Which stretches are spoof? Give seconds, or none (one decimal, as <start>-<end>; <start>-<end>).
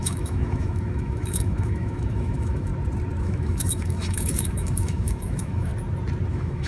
0.0-2.7; 3.2-5.7; 6.3-6.7